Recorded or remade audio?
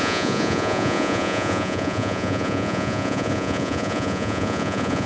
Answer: remade